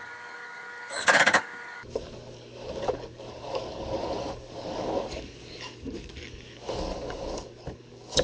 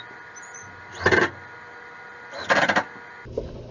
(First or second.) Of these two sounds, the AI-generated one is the first